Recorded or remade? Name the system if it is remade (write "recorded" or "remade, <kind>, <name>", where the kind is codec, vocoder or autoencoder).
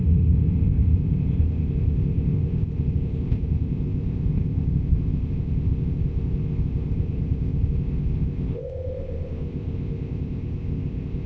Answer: remade, codec, ZipCodec